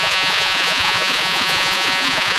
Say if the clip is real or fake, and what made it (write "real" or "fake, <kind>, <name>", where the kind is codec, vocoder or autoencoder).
fake, vocoder, Vocos